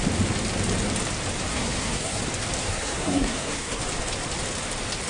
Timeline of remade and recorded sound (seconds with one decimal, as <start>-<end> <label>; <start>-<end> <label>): 0.0-1.5 recorded; 1.5-2.2 remade; 2.2-2.6 recorded; 2.6-3.8 remade; 3.8-5.1 recorded